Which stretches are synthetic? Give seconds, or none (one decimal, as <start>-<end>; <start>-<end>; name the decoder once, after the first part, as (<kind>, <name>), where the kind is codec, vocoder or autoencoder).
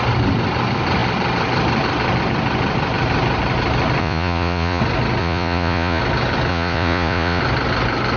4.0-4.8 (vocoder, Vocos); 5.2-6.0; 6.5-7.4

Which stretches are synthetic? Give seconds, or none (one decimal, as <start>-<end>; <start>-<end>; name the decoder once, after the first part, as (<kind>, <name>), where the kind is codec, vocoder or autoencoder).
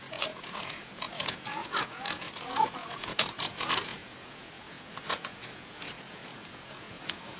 0.0-7.4 (vocoder, Vocos)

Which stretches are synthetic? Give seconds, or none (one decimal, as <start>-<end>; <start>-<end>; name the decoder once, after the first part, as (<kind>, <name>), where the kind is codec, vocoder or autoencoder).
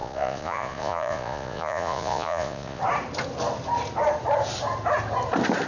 0.0-2.8 (vocoder, Vocos)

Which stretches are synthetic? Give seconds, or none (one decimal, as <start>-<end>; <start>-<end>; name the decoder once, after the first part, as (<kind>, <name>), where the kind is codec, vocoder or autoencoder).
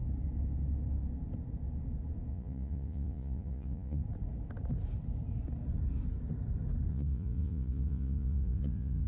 2.3-4.0 (vocoder, Vocos); 6.9-9.1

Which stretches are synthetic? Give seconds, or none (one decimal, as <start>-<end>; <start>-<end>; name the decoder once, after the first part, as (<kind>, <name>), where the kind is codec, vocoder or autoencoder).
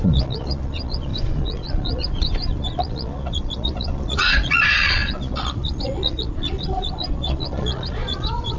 0.0-8.6 (vocoder, Vocos)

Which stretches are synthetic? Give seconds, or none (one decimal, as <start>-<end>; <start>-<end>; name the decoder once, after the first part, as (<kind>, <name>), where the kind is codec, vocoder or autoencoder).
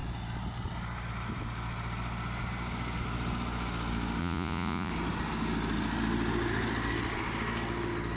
4.2-4.9 (vocoder, Vocos)